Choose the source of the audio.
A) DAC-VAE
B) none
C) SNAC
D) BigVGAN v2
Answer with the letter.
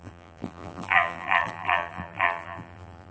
D